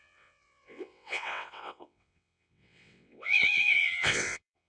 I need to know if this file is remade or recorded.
remade